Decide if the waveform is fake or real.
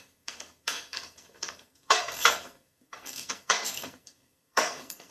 fake